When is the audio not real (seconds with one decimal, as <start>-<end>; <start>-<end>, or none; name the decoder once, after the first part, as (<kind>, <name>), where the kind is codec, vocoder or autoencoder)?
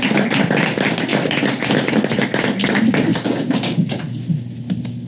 3.1-4.0 (codec, DAC)